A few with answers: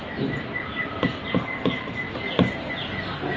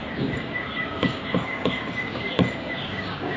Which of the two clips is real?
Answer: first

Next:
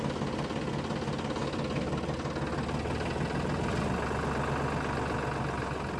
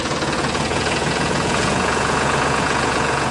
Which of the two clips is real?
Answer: first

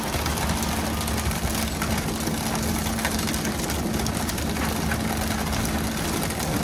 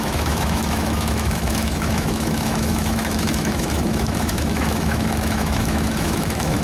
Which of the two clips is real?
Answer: first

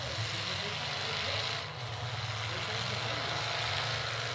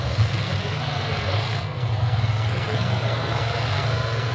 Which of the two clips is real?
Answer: first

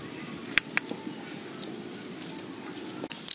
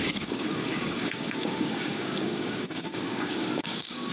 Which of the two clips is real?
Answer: first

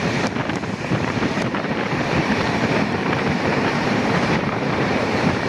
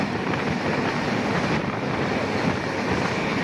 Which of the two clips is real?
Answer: second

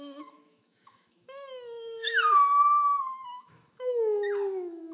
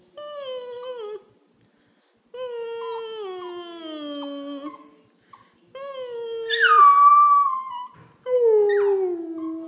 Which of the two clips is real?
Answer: second